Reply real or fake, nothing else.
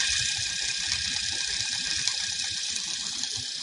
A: real